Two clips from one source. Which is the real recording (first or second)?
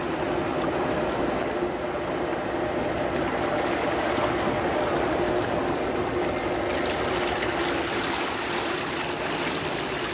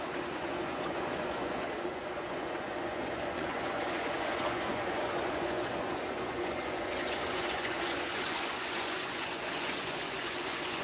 first